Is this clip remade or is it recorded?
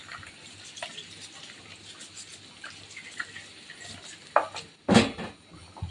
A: recorded